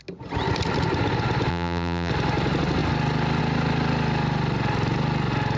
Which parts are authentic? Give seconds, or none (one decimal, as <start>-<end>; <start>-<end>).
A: 0.0-1.5; 2.1-5.6